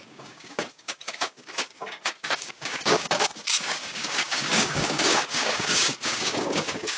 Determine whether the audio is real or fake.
fake